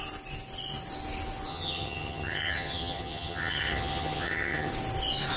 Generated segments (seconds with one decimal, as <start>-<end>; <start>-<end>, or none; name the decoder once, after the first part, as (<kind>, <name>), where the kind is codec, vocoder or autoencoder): 1.5-4.7 (vocoder, HiFi-GAN)